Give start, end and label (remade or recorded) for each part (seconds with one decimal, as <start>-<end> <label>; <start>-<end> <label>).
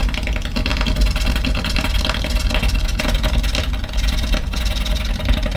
0.0-0.7 recorded; 0.7-2.5 remade; 2.5-3.8 recorded; 3.8-4.6 remade; 4.6-5.6 recorded